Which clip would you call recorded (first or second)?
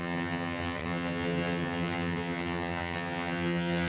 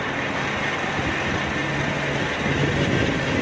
second